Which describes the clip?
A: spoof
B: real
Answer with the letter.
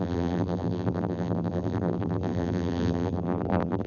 A